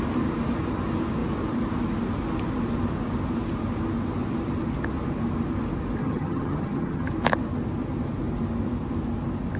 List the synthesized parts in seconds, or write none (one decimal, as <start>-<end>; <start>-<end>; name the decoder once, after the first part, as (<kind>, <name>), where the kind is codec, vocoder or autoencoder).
6.0-7.1 (vocoder, HiFi-GAN)